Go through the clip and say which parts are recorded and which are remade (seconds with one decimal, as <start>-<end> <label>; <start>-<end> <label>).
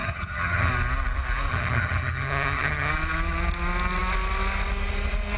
0.0-0.7 remade; 0.7-1.5 recorded; 1.5-2.9 remade; 2.9-5.4 recorded